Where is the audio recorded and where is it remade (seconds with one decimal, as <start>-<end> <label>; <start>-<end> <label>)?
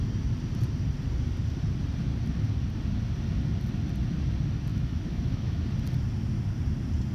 0.0-4.7 recorded; 4.7-5.6 remade; 5.6-7.1 recorded